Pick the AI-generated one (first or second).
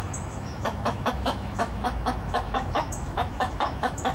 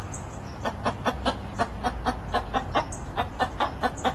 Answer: first